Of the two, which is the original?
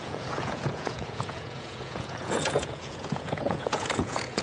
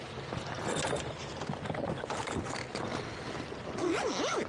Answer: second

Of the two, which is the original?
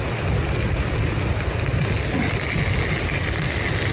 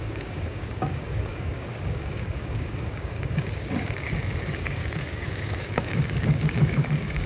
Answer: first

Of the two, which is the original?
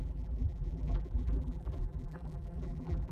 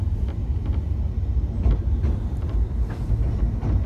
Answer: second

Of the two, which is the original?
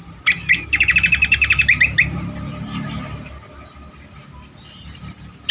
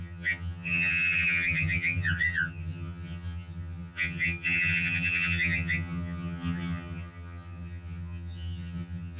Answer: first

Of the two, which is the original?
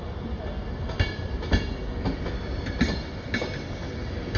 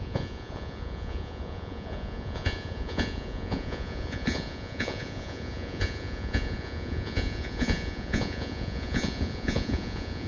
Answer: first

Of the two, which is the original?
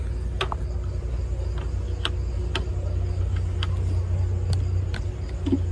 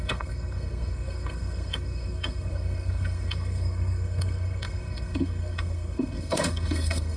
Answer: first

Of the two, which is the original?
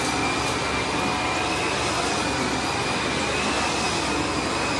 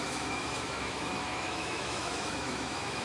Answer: first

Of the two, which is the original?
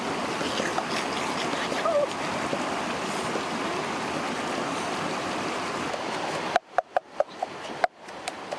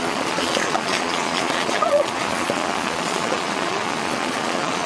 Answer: first